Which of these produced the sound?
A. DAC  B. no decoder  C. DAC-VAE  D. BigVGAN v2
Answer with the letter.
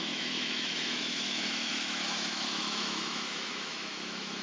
C